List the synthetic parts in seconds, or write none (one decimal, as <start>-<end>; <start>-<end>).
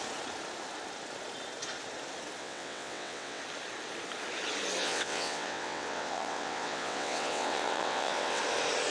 2.4-3.4; 4.8-8.4